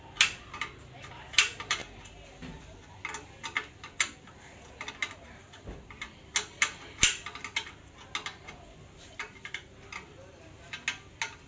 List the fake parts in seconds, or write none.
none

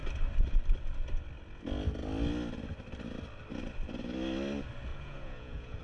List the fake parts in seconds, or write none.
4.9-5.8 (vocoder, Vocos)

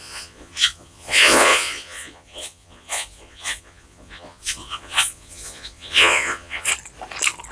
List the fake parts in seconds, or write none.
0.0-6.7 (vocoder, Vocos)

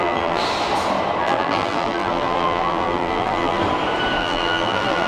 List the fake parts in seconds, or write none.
0.0-0.4 (vocoder, BigVGAN v2); 1.2-3.6; 4.2-5.1

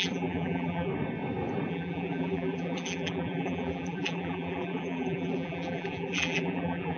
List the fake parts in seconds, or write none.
0.0-0.9 (vocoder, BigVGAN v2); 1.7-7.0

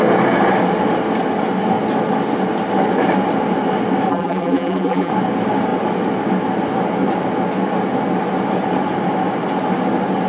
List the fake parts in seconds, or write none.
4.1-5.1 (vocoder, BigVGAN v2)